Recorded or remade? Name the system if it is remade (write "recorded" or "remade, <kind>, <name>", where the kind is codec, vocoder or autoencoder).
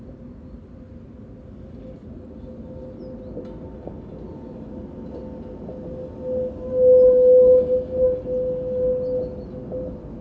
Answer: recorded